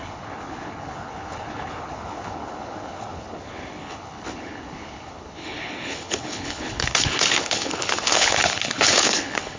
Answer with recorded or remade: remade